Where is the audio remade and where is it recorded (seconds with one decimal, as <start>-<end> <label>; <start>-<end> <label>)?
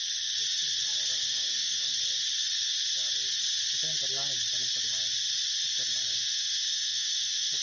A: 0.0-1.2 recorded; 1.2-1.9 remade; 1.9-6.1 recorded; 6.1-7.6 remade